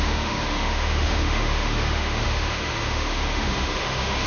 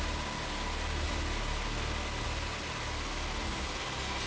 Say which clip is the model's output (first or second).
first